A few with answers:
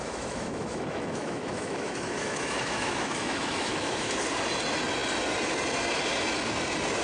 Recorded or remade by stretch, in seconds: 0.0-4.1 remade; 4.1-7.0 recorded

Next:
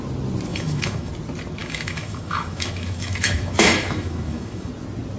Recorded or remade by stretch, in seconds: 0.0-0.5 recorded; 0.5-1.1 remade; 1.1-1.6 recorded; 1.6-4.7 remade; 4.7-5.2 recorded

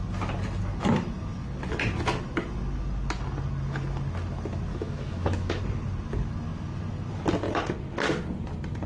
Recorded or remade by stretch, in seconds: 0.0-4.7 recorded; 4.7-5.6 remade; 5.6-8.9 recorded

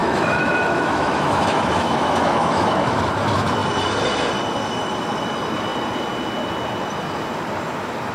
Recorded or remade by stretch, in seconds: 0.0-3.0 remade; 3.0-8.1 recorded

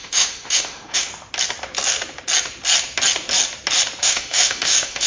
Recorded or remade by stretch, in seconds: 0.0-1.1 remade; 1.1-4.0 recorded; 4.0-5.1 remade